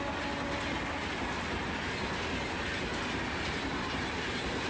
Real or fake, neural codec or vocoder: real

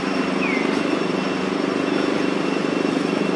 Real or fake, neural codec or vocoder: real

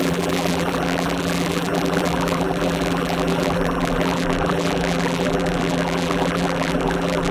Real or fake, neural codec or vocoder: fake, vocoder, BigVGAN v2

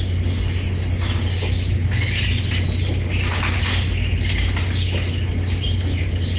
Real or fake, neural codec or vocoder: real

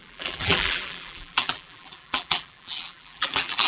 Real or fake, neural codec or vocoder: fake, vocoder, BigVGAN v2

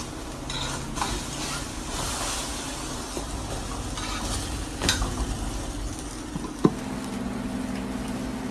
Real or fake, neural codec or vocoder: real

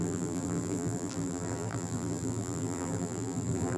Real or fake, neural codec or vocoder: fake, vocoder, BigVGAN v2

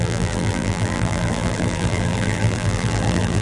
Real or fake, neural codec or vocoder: fake, vocoder, BigVGAN v2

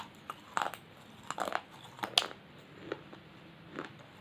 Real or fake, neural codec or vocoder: real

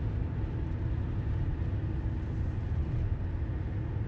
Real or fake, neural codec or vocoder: real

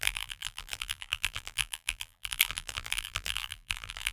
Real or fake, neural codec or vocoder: fake, vocoder, BigVGAN v2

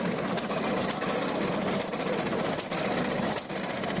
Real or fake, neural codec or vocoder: real